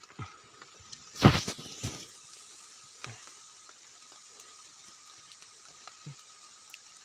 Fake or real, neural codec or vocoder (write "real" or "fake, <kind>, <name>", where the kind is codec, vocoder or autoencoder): fake, vocoder, BigVGAN v2